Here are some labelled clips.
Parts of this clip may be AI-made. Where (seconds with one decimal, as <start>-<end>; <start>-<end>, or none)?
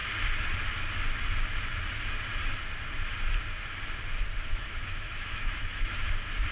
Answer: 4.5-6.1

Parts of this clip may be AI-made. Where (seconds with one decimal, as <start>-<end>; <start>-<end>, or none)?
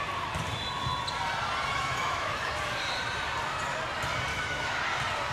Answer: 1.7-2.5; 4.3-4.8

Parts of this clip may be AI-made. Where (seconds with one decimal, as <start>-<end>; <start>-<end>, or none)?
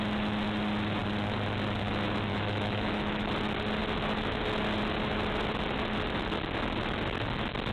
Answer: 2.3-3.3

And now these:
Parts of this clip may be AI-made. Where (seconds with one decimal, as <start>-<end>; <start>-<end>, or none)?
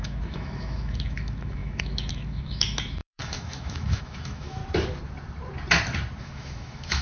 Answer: 0.0-4.6; 6.2-7.0